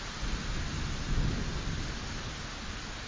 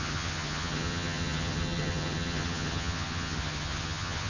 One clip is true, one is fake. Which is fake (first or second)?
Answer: second